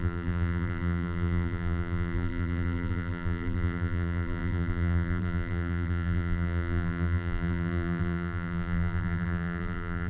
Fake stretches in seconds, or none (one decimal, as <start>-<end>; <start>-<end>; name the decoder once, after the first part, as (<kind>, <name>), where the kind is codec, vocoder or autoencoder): 0.0-10.1 (vocoder, BigVGAN v2)